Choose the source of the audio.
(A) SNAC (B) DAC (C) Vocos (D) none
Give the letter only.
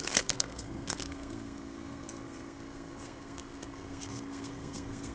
A